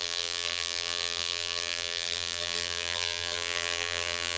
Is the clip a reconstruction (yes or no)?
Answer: yes